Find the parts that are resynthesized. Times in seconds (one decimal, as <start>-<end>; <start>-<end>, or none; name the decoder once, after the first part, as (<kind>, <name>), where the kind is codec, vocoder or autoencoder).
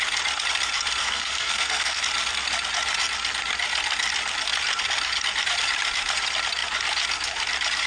1.0-2.0 (codec, SNAC)